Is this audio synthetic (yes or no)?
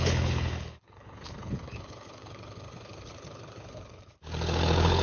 yes